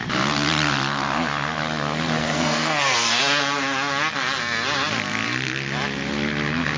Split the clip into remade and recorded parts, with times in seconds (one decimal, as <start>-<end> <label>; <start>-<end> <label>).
0.0-2.2 recorded; 2.2-3.2 remade; 3.2-6.8 recorded